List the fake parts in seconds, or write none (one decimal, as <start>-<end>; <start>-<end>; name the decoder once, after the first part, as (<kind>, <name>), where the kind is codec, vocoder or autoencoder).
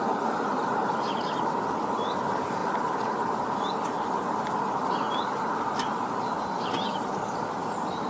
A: 0.0-8.1 (vocoder, BigVGAN v2)